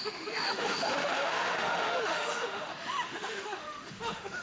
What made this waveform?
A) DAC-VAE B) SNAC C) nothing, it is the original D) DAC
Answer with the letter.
A